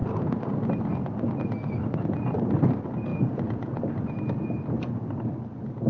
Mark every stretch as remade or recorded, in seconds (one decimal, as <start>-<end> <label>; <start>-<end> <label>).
0.0-3.1 recorded; 3.1-3.8 remade; 3.8-5.9 recorded